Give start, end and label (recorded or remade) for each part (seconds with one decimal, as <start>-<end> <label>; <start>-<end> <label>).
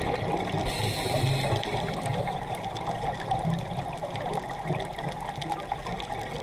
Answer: 0.0-0.6 recorded; 0.6-4.4 remade; 4.4-6.4 recorded